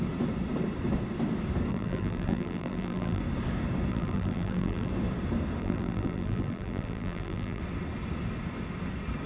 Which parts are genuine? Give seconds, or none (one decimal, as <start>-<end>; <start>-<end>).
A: 0.0-1.7; 3.2-3.9; 4.9-5.6; 7.6-9.3